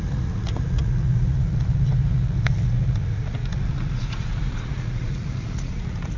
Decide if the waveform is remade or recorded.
remade